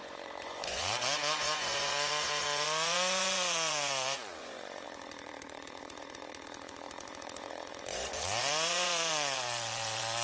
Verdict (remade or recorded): remade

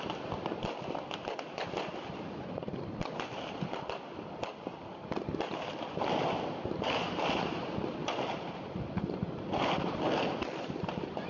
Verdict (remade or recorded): recorded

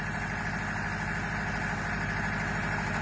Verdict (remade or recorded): recorded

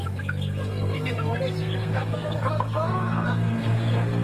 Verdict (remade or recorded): remade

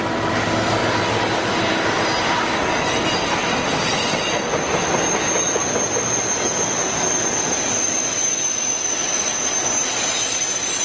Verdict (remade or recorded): recorded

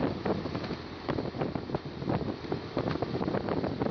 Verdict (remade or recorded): remade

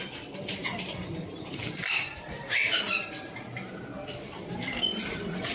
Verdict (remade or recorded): remade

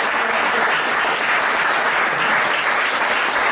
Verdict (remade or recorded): recorded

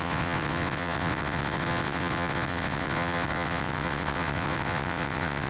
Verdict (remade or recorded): remade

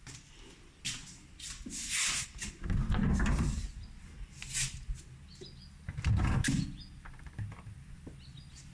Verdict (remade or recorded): recorded